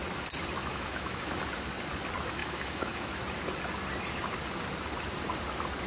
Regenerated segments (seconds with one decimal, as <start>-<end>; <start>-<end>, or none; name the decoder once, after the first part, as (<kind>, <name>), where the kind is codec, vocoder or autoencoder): 0.6-1.3 (autoencoder, DAC-VAE); 2.4-3.1